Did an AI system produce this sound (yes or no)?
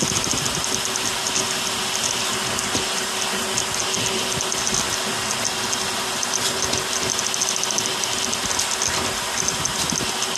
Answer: no